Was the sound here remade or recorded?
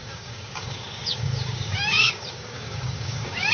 remade